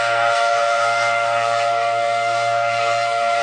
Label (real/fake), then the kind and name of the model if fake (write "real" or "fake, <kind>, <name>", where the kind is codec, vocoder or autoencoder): fake, codec, SNAC